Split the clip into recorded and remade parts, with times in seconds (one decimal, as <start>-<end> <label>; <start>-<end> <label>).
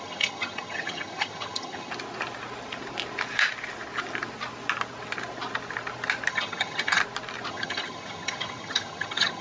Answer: 0.0-1.9 remade; 1.9-6.3 recorded; 6.3-7.0 remade; 7.0-7.5 recorded; 7.5-9.4 remade